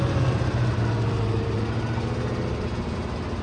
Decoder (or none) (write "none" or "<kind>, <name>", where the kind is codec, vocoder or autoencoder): none